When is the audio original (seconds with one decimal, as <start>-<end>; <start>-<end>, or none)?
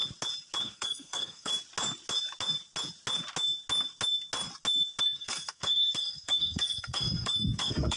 0.0-0.6; 1.5-5.0